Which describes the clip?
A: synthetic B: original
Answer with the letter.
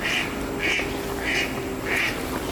B